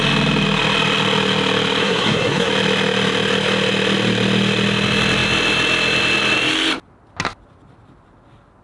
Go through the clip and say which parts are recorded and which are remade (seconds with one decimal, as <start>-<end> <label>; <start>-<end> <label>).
0.0-1.8 recorded; 1.8-2.5 remade; 2.5-8.6 recorded